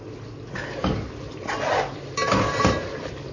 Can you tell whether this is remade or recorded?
recorded